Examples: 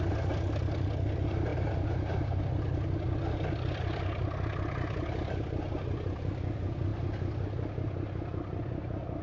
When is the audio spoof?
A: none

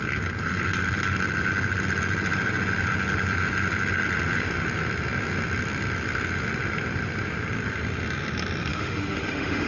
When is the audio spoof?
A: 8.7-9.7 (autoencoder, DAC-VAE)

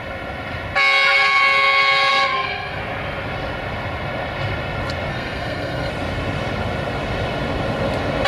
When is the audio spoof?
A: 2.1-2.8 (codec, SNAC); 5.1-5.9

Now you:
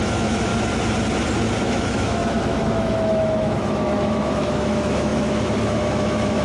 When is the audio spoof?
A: 0.0-0.5 (autoencoder, DAC-VAE); 1.6-6.4

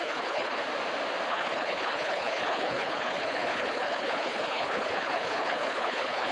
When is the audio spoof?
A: 0.0-0.6 (codec, HILCodec); 1.3-6.3

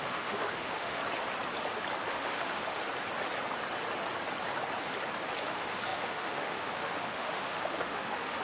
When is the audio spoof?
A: 0.0-1.0 (autoencoder, DAC-VAE); 2.1-2.8; 5.4-8.4